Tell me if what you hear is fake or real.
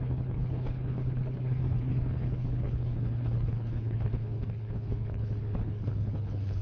fake